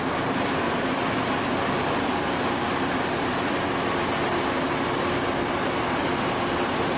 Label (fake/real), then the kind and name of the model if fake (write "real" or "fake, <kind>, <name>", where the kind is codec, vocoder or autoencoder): real